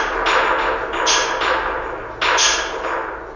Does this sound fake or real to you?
real